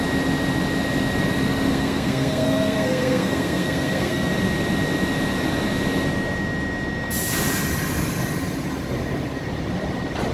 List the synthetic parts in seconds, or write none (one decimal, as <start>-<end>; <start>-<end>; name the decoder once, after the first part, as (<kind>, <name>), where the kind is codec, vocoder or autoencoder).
1.7-4.3 (codec, SNAC)